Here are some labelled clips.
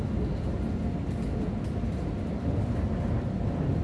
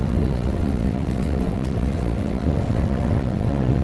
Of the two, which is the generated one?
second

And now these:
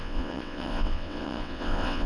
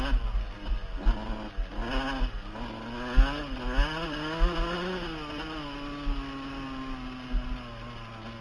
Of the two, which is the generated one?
first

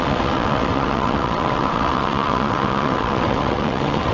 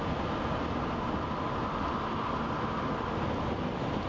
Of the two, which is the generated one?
first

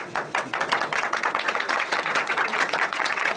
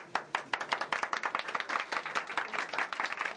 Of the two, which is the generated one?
first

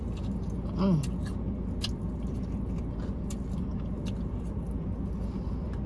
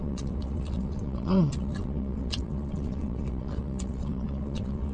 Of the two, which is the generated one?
second